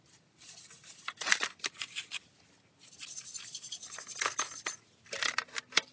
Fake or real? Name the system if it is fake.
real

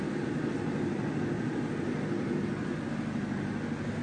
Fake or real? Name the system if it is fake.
real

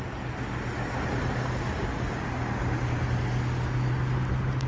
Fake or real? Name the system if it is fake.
real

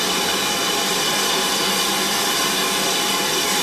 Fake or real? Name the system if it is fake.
real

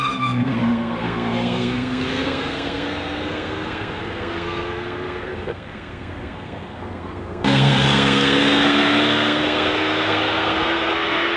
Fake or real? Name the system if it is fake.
fake, codec, SNAC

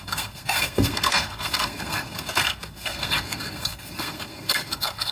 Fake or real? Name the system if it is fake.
fake, codec, SNAC